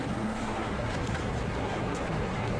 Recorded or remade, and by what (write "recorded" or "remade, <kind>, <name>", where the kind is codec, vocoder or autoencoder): remade, codec, SNAC